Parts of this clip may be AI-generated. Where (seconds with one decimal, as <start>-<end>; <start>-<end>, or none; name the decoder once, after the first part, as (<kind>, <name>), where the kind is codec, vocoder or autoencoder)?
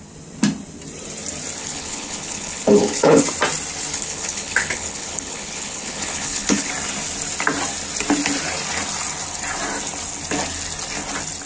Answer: 1.6-3.2 (codec, HILCodec); 3.9-6.7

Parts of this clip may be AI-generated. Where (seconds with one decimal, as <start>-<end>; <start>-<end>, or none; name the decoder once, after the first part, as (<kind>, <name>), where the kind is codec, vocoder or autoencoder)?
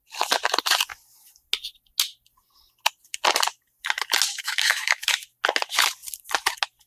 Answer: 4.3-5.1 (autoencoder, DAC-VAE)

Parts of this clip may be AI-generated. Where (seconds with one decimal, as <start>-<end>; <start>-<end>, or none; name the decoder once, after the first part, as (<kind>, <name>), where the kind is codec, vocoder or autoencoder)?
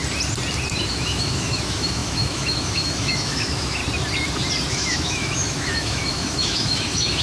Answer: 0.9-3.8 (autoencoder, DAC-VAE); 4.7-7.2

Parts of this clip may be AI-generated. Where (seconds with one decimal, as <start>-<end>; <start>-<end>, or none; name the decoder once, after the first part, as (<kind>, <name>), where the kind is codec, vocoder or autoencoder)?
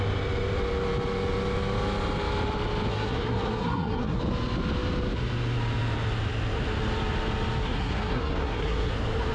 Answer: 2.9-4.2 (codec, SNAC); 7.6-8.9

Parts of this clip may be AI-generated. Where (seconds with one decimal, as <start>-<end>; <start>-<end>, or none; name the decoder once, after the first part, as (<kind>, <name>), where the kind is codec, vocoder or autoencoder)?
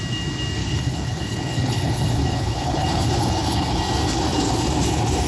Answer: 0.6-3.8 (codec, HILCodec)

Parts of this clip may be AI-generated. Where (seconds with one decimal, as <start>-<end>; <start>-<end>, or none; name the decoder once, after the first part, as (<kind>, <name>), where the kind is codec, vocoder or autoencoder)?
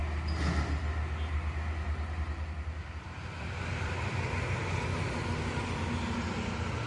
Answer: none